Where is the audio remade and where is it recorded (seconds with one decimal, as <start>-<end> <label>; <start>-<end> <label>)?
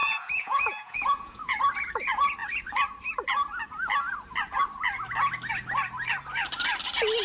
0.0-1.6 remade; 1.6-7.2 recorded